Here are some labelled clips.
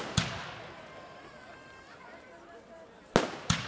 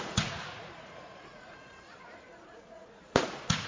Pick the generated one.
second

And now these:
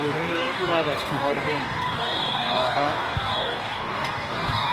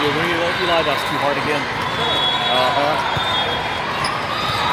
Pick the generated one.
first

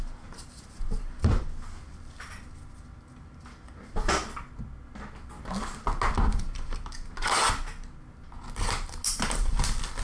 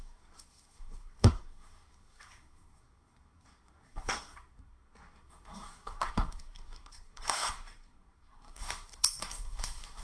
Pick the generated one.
second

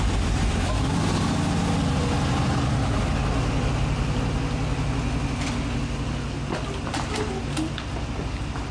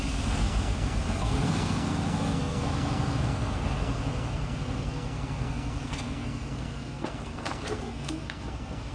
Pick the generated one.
second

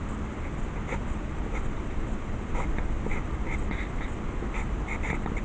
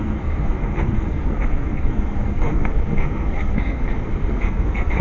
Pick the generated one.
second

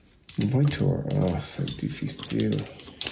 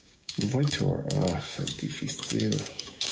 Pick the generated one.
second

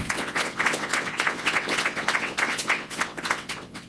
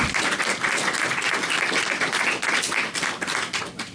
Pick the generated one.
first